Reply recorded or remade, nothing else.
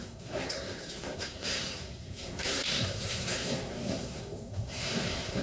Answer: remade